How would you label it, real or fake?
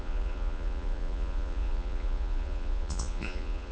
fake